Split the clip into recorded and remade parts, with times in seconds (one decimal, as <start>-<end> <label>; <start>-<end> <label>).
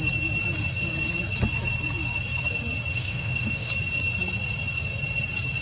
0.0-2.9 recorded; 2.9-3.7 remade; 3.7-5.6 recorded